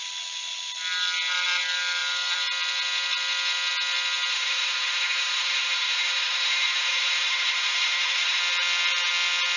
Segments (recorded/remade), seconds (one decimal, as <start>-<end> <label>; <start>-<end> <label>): 0.0-4.3 recorded; 4.3-8.4 remade; 8.4-9.6 recorded